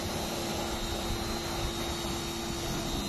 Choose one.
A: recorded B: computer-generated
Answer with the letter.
A